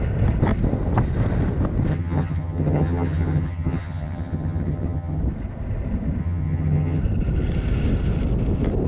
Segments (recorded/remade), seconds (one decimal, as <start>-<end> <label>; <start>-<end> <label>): 0.0-1.9 recorded; 1.9-5.2 remade; 5.2-6.2 recorded; 6.2-7.0 remade; 7.0-8.9 recorded